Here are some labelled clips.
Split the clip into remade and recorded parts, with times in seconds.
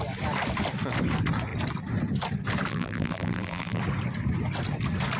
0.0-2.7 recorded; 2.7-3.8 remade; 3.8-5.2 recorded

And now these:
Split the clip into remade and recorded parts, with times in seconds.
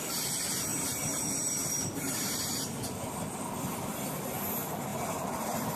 0.0-0.7 recorded; 0.7-4.2 remade; 4.2-4.9 recorded; 4.9-5.8 remade